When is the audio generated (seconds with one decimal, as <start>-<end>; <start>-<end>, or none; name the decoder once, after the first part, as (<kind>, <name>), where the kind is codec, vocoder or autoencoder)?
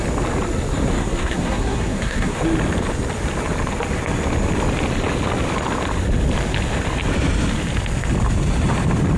1.0-2.4 (codec, SNAC)